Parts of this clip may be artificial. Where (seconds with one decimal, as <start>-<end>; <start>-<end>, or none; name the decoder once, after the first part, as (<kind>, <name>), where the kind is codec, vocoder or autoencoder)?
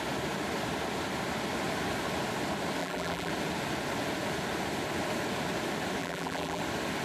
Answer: 2.8-3.3 (vocoder, BigVGAN v2); 6.0-6.6